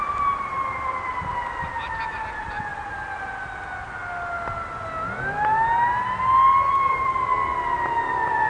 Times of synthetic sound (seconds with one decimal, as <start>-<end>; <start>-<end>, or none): 0.0-2.7; 6.7-7.5; 8.1-8.5